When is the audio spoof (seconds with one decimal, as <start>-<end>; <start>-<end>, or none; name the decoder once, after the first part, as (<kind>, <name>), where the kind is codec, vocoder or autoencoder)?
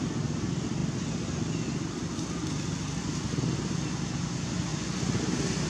none